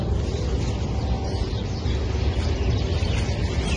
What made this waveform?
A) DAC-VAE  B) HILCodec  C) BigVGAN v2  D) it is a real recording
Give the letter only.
D